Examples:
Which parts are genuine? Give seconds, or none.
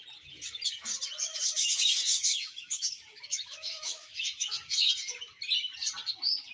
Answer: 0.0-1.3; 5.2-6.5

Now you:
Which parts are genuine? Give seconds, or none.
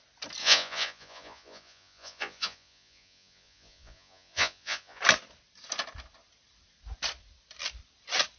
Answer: 0.0-0.4; 5.0-8.4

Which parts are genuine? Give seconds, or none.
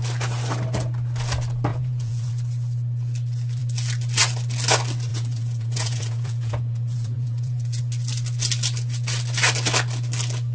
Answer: 0.0-1.7; 2.3-5.1; 7.8-10.5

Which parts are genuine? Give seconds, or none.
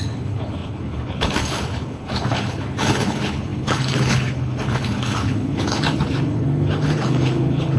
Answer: none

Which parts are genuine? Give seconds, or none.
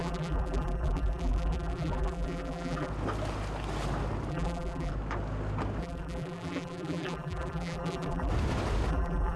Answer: 2.9-4.3; 4.9-5.8; 8.3-8.9